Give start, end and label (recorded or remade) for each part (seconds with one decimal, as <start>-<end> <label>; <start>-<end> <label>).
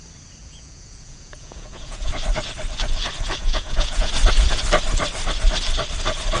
0.0-0.4 recorded; 0.4-2.1 remade; 2.1-3.4 recorded; 3.4-4.1 remade; 4.1-6.4 recorded